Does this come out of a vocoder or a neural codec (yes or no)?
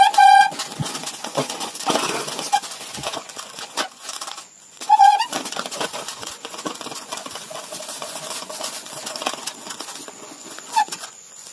yes